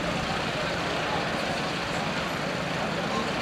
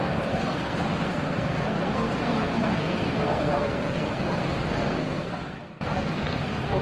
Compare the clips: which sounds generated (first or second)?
second